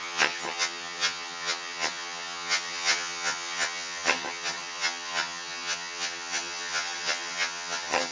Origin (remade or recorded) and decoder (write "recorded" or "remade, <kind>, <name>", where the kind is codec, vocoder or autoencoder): remade, vocoder, HiFi-GAN